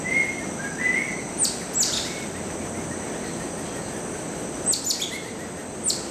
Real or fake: real